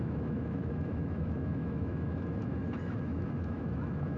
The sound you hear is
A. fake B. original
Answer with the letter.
A